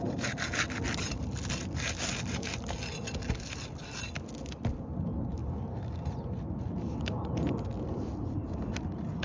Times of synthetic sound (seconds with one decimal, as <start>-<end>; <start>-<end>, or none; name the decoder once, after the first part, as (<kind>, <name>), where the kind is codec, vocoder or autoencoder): none